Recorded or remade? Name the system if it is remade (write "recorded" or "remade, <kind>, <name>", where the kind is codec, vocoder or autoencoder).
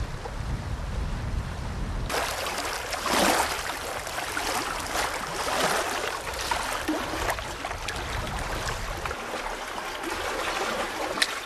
recorded